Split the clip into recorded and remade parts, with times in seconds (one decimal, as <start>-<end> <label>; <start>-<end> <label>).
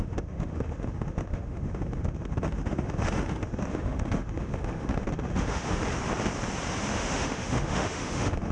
0.0-5.8 remade; 5.8-6.9 recorded; 6.9-8.5 remade